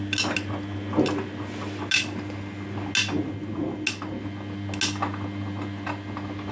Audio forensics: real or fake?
real